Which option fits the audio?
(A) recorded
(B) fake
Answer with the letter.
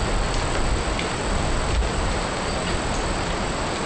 A